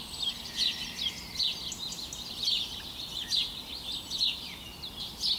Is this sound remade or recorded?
recorded